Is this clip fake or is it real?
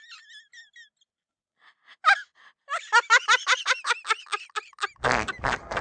real